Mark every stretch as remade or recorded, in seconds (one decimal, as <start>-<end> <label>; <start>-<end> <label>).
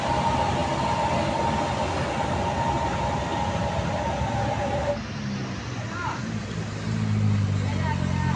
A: 0.0-8.4 recorded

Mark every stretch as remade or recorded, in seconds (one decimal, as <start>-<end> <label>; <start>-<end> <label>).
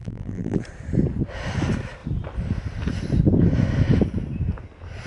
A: 0.0-0.6 remade; 0.6-5.1 recorded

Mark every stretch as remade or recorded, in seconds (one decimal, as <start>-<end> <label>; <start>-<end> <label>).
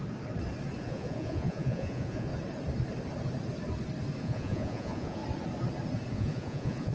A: 0.0-0.8 recorded; 0.8-2.3 remade; 2.3-4.2 recorded; 4.2-5.2 remade; 5.2-6.1 recorded; 6.1-6.9 remade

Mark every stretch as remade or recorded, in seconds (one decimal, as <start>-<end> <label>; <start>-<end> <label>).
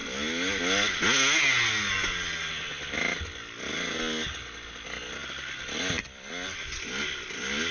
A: 0.0-5.2 recorded; 5.2-6.3 remade; 6.3-7.7 recorded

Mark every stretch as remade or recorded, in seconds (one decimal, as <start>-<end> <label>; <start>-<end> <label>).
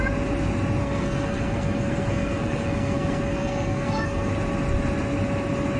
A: 0.0-0.8 recorded; 0.8-4.3 remade; 4.3-5.8 recorded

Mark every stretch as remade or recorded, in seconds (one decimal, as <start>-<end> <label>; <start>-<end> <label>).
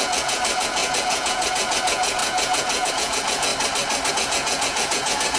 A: 0.0-3.5 remade; 3.5-4.1 recorded; 4.1-5.4 remade